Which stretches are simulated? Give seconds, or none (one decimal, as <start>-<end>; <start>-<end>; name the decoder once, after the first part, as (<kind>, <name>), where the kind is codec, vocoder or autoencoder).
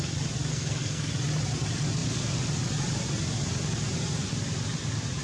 0.5-1.1 (codec, SNAC)